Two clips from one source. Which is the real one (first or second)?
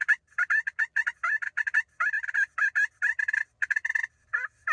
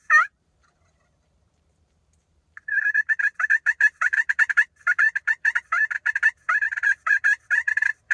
first